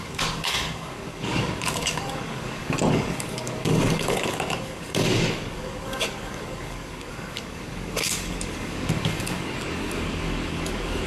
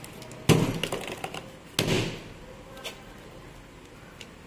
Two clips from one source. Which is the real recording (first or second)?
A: second